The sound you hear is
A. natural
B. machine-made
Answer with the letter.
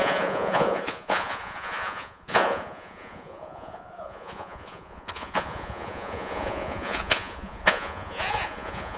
B